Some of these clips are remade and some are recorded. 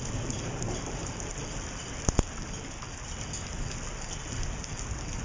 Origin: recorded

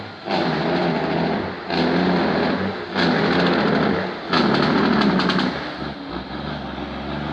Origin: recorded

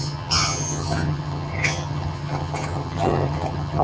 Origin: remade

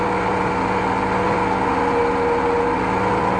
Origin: recorded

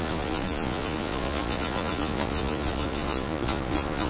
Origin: remade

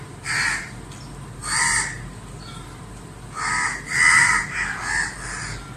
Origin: recorded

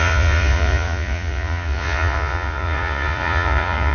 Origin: remade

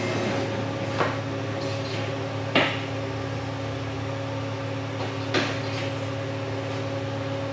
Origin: recorded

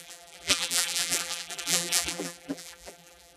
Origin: remade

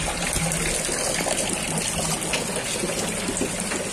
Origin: recorded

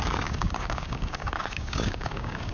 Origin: remade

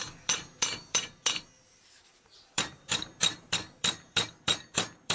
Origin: remade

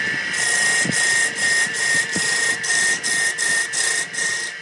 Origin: recorded